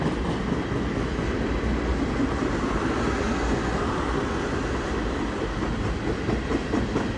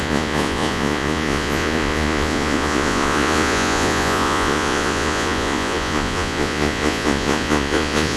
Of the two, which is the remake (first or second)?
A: second